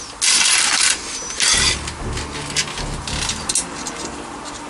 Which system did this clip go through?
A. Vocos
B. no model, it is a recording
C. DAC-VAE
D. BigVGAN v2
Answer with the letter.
B